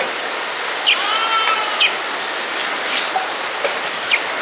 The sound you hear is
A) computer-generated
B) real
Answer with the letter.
B